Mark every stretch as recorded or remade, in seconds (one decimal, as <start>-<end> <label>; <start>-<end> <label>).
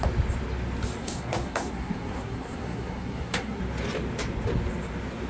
0.0-1.0 recorded; 1.0-3.6 remade; 3.6-5.3 recorded